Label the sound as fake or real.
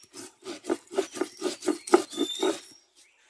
real